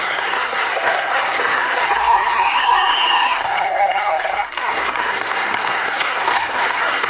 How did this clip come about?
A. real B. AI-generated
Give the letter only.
B